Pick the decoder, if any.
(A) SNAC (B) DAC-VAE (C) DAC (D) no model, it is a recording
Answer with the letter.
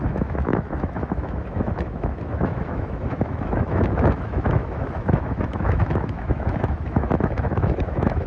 B